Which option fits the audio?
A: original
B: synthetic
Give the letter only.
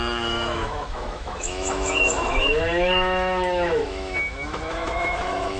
B